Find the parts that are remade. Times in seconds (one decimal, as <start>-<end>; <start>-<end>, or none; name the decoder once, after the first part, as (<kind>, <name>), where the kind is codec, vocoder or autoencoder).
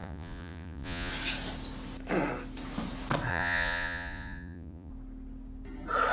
0.0-1.1 (vocoder, Vocos); 3.3-4.9